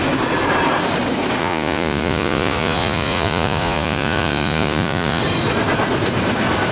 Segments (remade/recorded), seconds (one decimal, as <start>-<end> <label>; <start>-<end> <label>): 0.0-1.4 recorded; 1.4-5.2 remade; 5.2-6.7 recorded